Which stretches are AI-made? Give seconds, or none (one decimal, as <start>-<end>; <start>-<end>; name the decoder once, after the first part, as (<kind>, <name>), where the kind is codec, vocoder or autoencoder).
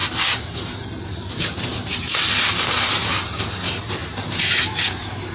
0.0-5.3 (vocoder, BigVGAN v2)